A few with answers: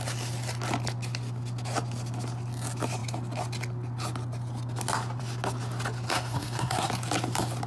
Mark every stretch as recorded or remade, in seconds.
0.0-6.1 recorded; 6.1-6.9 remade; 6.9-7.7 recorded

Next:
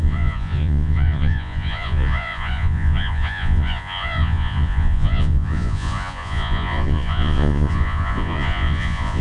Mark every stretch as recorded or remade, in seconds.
0.0-9.2 remade

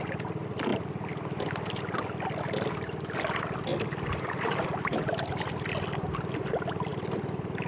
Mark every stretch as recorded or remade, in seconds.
0.0-7.7 recorded

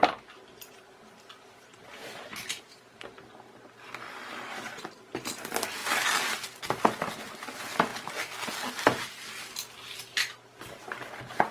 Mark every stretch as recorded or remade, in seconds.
0.0-1.7 recorded; 1.7-2.6 remade; 2.6-11.5 recorded